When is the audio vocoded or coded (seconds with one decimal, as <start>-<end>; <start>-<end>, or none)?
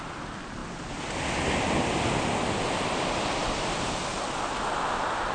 none